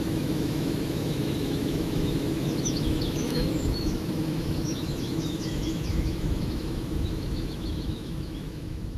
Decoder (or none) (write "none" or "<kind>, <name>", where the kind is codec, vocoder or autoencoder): autoencoder, DAC-VAE